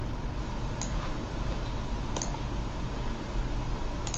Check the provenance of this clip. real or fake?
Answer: real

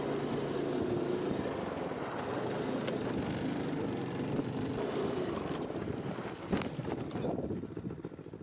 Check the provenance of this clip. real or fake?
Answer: real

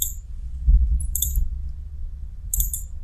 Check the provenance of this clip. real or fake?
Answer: fake